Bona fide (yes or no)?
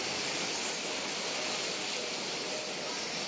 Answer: yes